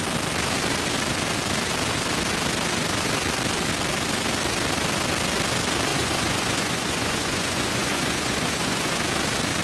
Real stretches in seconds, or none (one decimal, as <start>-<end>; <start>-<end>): 0.0-5.9; 9.0-9.6